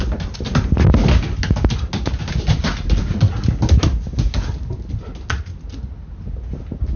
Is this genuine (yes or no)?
yes